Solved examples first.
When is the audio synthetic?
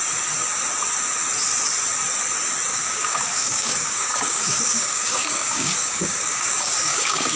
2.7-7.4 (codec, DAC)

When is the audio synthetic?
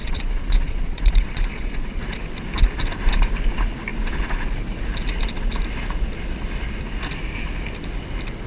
0.0-2.0 (vocoder, Vocos)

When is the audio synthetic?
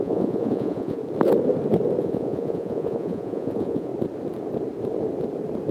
0.0-1.0 (vocoder, Vocos); 2.0-3.9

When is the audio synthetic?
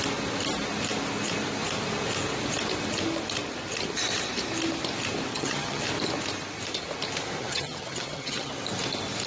5.3-5.8 (vocoder, HiFi-GAN); 7.4-8.5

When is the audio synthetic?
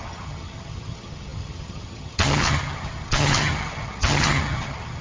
0.0-5.0 (vocoder, HiFi-GAN)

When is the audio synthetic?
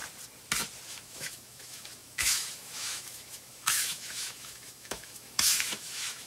0.9-6.3 (autoencoder, DAC-VAE)